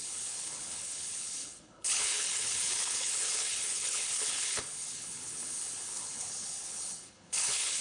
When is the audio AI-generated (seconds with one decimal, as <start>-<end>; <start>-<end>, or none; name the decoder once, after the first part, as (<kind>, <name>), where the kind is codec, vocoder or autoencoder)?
0.0-7.8 (codec, HILCodec)